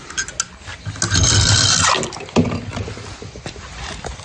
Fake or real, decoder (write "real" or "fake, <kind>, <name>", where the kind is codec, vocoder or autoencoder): real